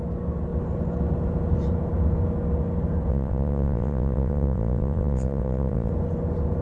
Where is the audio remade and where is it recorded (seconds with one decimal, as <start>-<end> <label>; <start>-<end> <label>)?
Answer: 0.0-3.1 recorded; 3.1-5.9 remade; 5.9-6.6 recorded